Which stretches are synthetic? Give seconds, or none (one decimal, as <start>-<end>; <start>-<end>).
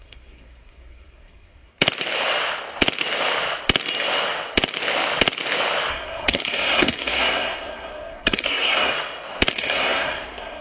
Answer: 0.0-1.7; 5.9-8.9; 9.5-10.6